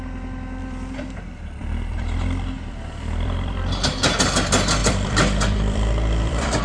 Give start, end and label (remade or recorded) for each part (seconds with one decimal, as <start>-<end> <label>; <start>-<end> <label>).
0.0-0.6 recorded; 0.6-4.2 remade; 4.2-4.8 recorded; 4.8-6.6 remade